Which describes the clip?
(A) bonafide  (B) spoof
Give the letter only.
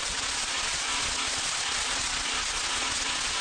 B